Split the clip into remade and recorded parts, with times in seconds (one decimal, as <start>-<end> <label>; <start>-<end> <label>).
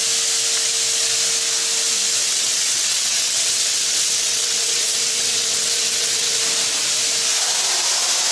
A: 0.0-2.2 recorded; 2.2-6.4 remade; 6.4-8.3 recorded